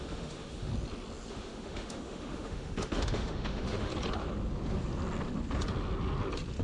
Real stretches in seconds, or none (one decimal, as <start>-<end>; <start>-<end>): 0.7-1.3; 3.9-6.6